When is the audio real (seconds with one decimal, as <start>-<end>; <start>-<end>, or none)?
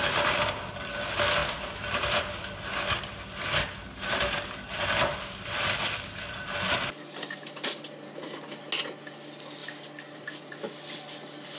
0.0-1.4; 2.9-9.6; 10.5-11.6